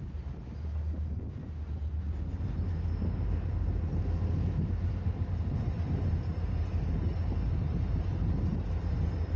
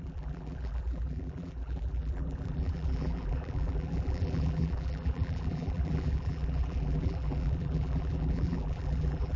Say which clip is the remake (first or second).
second